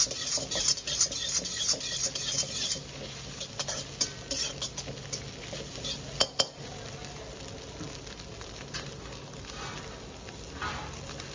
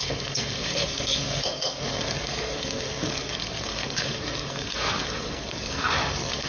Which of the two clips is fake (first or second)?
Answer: second